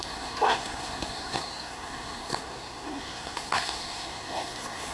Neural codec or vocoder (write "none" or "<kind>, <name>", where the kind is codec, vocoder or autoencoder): codec, SNAC